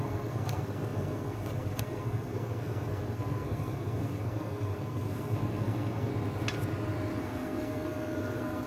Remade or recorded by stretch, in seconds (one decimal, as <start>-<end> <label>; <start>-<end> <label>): 0.0-6.1 remade; 6.1-7.2 recorded; 7.2-8.7 remade